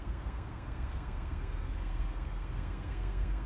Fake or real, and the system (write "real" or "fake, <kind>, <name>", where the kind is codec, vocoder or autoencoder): fake, codec, SNAC